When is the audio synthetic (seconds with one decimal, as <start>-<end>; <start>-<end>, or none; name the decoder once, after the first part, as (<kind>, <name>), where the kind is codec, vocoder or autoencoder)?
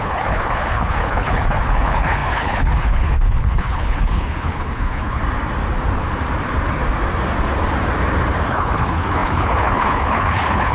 0.0-5.2 (codec, HILCodec); 8.5-10.7